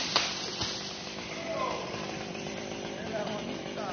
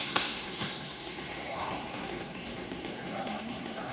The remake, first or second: second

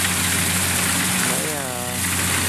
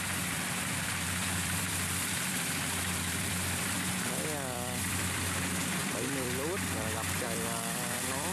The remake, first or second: second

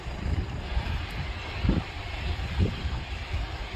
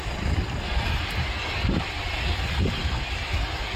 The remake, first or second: first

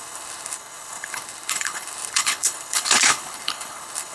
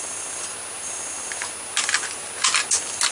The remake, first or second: first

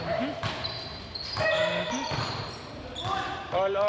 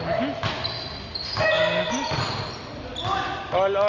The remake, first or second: first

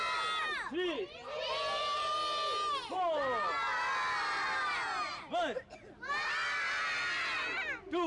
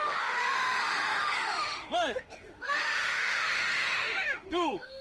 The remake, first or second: second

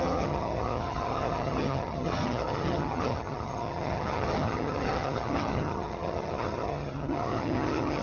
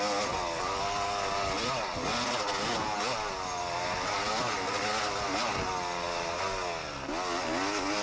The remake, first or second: first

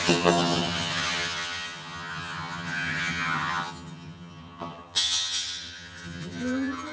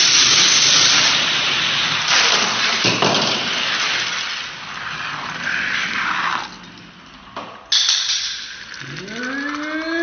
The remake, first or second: first